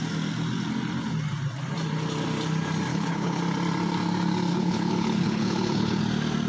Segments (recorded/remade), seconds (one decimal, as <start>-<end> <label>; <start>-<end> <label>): 0.0-2.9 recorded; 2.9-3.4 remade; 3.4-4.5 recorded; 4.5-6.0 remade; 6.0-6.5 recorded

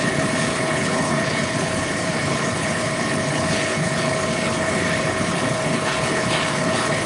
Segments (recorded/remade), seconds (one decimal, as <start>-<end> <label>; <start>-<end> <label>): 0.0-7.1 remade

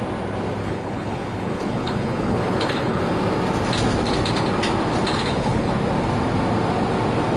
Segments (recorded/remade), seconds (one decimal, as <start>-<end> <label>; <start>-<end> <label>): 0.0-0.6 recorded; 0.6-3.0 remade; 3.0-5.1 recorded; 5.1-5.7 remade; 5.7-7.4 recorded

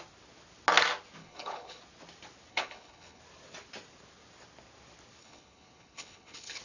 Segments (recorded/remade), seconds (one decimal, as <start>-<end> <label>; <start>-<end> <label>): 0.0-1.2 recorded; 1.2-1.8 remade; 1.8-2.5 recorded; 2.5-3.2 remade; 3.2-5.2 recorded; 5.2-6.6 remade

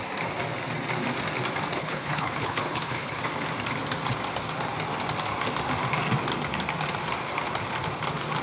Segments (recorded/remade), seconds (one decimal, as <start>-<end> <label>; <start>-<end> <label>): 0.0-1.8 recorded; 1.8-3.2 remade; 3.2-8.4 recorded

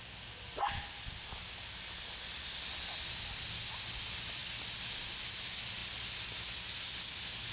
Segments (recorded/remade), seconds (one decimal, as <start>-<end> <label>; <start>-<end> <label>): 0.0-7.5 recorded

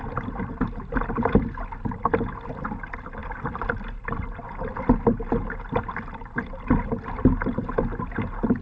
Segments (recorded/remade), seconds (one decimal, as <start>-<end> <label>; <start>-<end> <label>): 0.0-8.6 recorded

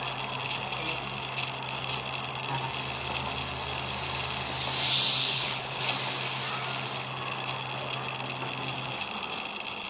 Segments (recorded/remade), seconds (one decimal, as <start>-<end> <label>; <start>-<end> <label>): 0.0-5.2 recorded; 5.2-5.8 remade; 5.8-9.9 recorded